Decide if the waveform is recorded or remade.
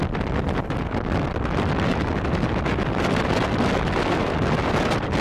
recorded